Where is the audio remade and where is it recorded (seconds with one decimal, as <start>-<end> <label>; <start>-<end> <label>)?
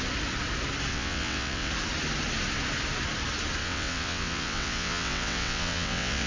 0.0-0.9 recorded; 0.9-1.7 remade; 1.7-3.6 recorded; 3.6-6.3 remade